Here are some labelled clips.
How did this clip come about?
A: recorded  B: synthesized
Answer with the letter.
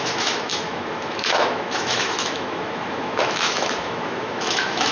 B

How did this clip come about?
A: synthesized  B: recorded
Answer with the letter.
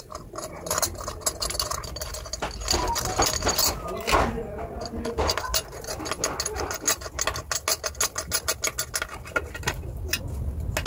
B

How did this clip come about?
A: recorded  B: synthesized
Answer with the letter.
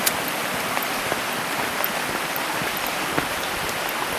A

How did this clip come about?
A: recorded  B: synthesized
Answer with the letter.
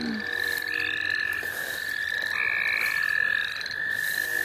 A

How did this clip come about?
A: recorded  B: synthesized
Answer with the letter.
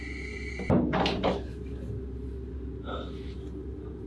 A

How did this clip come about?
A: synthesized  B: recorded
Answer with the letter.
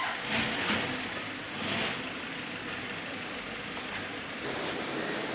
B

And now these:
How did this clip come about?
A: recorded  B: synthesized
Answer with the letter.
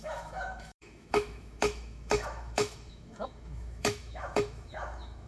B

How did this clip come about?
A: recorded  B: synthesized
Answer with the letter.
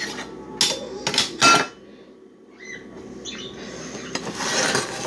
A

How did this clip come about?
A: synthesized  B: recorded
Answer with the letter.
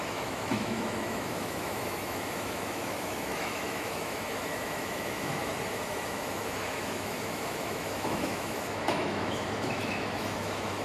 A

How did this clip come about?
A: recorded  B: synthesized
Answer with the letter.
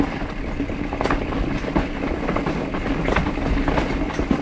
A